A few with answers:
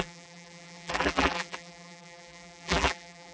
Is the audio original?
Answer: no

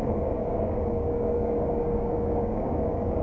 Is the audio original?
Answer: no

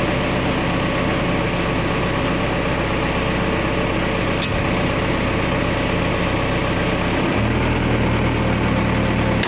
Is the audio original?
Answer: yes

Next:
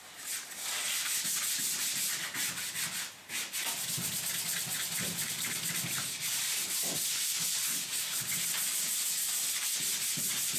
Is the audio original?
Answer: yes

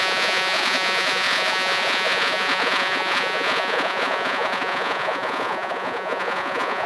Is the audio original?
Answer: no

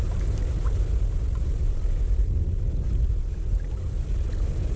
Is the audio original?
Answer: yes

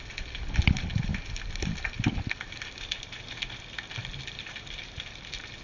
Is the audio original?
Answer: yes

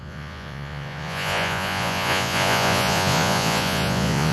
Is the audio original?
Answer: no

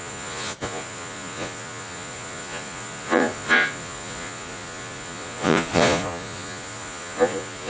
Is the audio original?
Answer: no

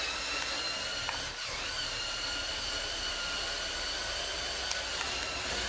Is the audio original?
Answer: yes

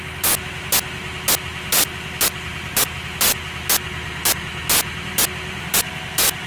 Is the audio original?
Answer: yes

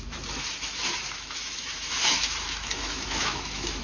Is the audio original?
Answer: no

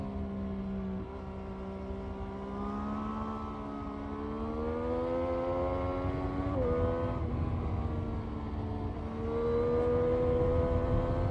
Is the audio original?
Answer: yes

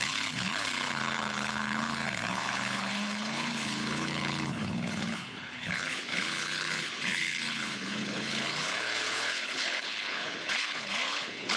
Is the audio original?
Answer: no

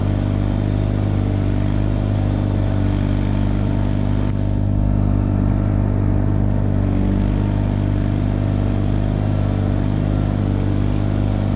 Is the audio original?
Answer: yes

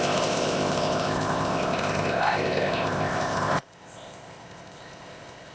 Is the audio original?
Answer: no